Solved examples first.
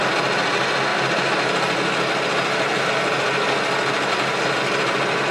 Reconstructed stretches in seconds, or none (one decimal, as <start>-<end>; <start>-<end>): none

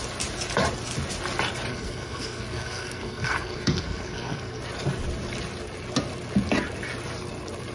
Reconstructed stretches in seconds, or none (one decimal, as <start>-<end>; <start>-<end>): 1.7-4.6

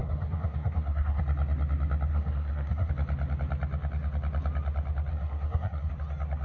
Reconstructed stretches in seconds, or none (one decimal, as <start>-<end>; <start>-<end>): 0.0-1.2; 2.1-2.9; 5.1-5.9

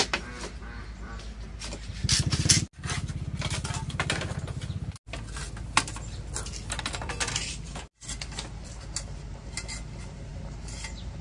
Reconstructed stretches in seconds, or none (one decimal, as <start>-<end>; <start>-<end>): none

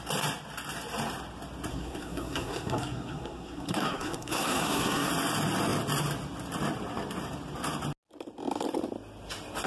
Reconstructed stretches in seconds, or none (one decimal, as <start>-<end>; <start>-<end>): 1.7-5.1

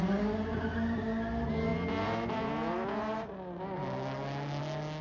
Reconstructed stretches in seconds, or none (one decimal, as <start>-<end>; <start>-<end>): none

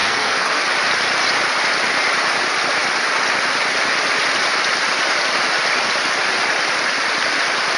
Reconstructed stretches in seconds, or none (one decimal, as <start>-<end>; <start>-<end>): 0.0-0.6